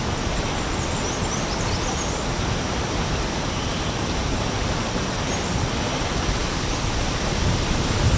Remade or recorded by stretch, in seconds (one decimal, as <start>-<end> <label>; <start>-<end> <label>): 0.0-8.2 recorded